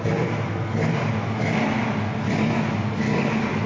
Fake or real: real